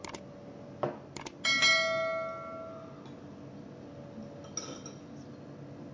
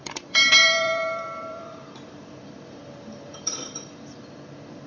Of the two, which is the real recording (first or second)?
first